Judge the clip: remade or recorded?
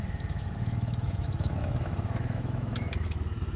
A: remade